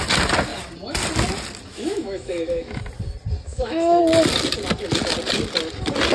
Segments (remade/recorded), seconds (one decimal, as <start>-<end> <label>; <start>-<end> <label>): 0.0-1.7 recorded; 1.7-2.8 remade; 2.8-3.5 recorded; 3.5-4.0 remade; 4.0-6.1 recorded